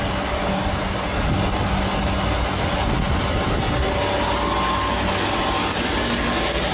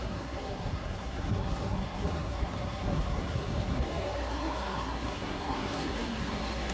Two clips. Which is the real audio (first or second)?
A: first